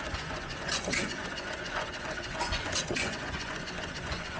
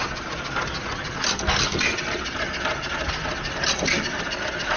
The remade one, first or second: first